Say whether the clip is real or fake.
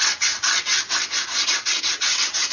fake